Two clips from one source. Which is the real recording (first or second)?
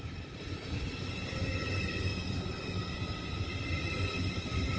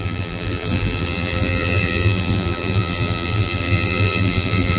first